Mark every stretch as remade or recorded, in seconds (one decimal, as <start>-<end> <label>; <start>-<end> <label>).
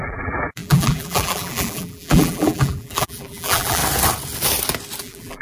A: 0.0-3.8 remade; 3.8-5.0 recorded; 5.0-5.4 remade